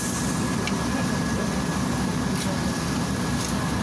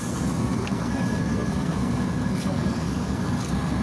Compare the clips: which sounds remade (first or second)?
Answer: second